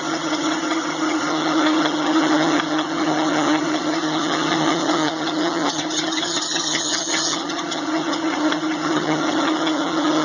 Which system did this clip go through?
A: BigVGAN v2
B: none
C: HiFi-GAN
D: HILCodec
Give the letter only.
C